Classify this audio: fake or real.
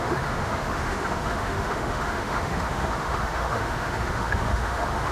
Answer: fake